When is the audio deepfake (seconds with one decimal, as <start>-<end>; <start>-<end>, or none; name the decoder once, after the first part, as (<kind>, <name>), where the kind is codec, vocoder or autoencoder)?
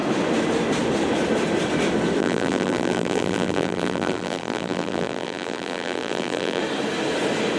2.2-6.6 (vocoder, BigVGAN v2)